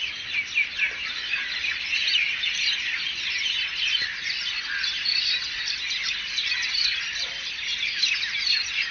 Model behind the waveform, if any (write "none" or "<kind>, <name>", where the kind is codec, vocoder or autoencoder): none